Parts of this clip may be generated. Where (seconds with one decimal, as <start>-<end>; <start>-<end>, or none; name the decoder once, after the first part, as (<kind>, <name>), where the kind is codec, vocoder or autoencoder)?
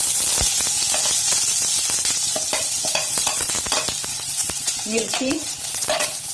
2.6-3.5 (vocoder, WaveNeXt); 4.1-6.3